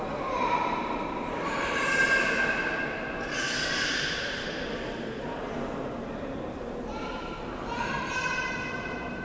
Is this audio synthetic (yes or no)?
yes